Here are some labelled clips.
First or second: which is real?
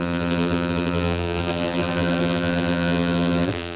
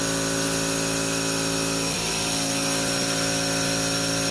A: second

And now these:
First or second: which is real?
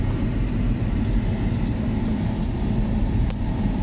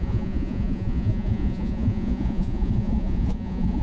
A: first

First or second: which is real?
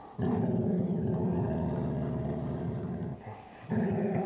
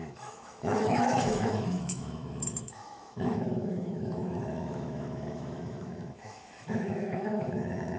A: first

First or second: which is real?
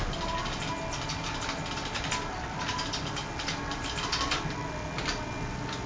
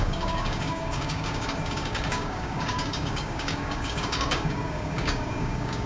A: first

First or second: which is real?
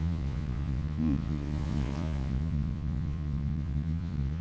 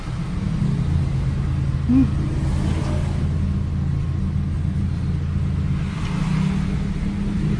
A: second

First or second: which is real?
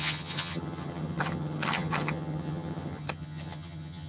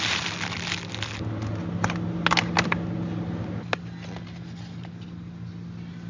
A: second